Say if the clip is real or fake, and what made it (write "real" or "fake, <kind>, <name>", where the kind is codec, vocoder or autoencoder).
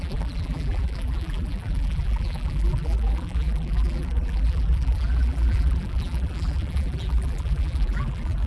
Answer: fake, vocoder, BigVGAN v2